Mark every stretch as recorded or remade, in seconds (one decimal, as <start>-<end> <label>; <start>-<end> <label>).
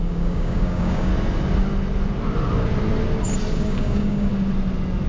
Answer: 0.0-1.1 remade; 1.1-3.5 recorded; 3.5-4.3 remade; 4.3-5.1 recorded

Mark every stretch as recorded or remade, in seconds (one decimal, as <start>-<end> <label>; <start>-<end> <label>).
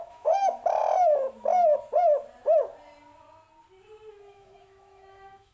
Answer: 0.0-0.8 remade; 0.8-4.1 recorded; 4.1-5.5 remade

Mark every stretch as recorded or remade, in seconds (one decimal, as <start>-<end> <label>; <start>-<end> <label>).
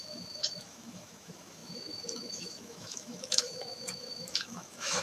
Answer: 0.0-5.0 remade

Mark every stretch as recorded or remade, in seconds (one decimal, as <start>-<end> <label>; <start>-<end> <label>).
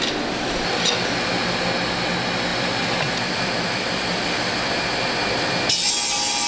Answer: 0.0-2.5 recorded; 2.5-5.1 remade; 5.1-6.5 recorded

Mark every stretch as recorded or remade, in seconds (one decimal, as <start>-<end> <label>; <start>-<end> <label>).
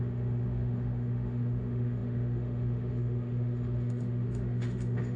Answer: 0.0-5.2 remade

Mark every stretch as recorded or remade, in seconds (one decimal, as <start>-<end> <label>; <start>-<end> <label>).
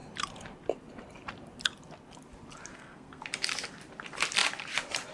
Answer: 0.0-2.7 recorded; 2.7-3.2 remade; 3.2-5.1 recorded